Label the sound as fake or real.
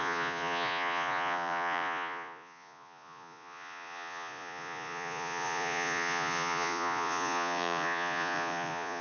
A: fake